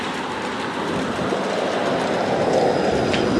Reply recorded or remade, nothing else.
recorded